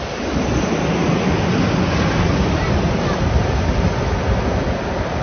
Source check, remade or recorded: recorded